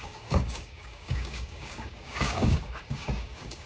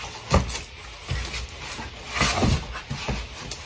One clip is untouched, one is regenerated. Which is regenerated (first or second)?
first